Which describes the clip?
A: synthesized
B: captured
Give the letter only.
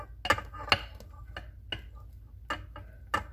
B